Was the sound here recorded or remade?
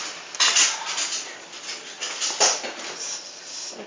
recorded